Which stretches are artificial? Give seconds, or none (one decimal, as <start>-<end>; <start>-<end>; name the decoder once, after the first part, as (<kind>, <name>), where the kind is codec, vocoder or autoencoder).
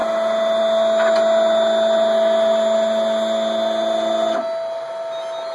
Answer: none